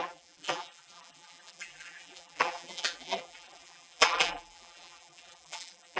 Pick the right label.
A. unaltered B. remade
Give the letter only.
B